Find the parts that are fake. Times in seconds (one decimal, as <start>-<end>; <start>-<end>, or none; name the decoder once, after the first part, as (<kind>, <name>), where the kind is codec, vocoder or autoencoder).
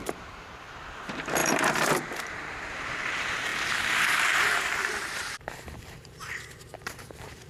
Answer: 0.0-7.5 (vocoder, BigVGAN v2)